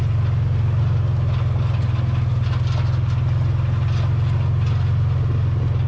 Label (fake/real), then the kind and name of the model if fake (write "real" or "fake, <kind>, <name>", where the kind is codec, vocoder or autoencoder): real